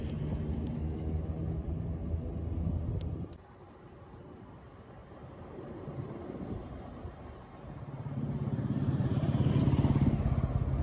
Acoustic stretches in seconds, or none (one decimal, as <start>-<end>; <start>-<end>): 0.0-5.0; 9.5-10.8